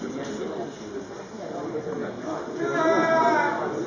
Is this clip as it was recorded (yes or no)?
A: yes